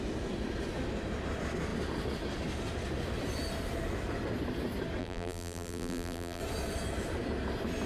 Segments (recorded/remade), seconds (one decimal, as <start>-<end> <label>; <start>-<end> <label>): 0.0-5.0 recorded; 5.0-6.4 remade; 6.4-7.9 recorded